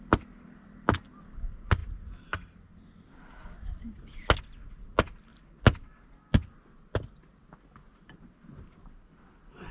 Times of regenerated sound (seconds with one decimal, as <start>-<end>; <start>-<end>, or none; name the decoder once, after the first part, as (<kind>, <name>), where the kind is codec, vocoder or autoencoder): none